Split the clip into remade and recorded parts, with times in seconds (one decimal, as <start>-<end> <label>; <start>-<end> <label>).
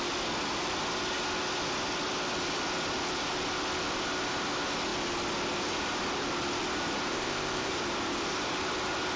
0.0-7.1 recorded; 7.1-7.7 remade; 7.7-9.2 recorded